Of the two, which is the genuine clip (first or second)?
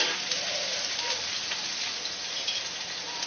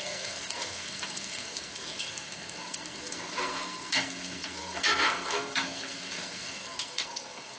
first